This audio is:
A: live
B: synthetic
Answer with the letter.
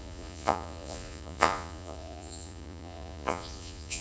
B